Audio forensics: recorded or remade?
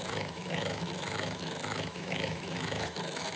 remade